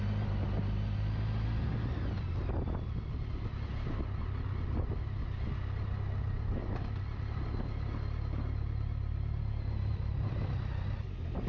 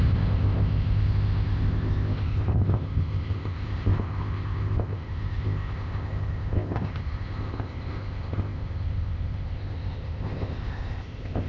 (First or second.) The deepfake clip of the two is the second